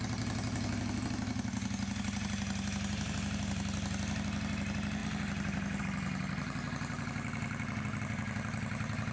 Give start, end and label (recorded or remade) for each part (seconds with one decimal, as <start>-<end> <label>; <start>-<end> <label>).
0.0-9.1 recorded